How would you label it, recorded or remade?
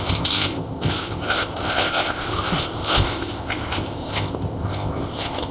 remade